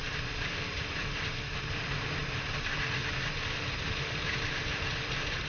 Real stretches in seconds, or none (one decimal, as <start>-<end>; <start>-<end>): 1.2-5.5